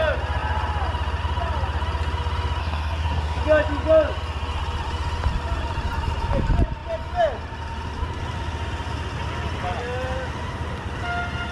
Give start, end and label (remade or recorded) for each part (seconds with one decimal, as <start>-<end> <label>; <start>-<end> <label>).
0.0-2.6 recorded; 2.6-3.4 remade; 3.4-11.5 recorded